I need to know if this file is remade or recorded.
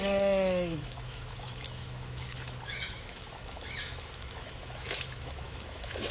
remade